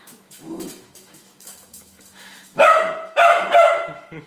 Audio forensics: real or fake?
fake